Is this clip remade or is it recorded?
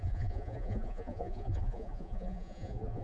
remade